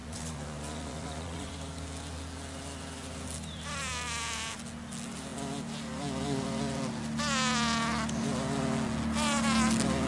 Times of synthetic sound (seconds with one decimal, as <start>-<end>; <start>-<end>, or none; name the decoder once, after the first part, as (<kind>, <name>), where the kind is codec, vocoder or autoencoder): 0.0-1.5 (vocoder, Vocos)